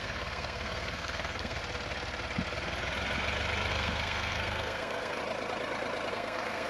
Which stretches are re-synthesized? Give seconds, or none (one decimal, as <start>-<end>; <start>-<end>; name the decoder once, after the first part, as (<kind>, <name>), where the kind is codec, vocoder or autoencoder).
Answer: 0.0-1.6 (codec, SNAC); 3.7-5.2; 6.1-6.7